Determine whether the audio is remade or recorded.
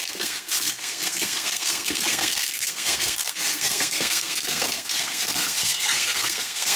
remade